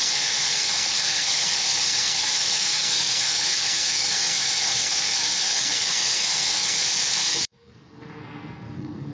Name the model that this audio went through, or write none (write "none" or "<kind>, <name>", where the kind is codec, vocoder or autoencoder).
codec, SNAC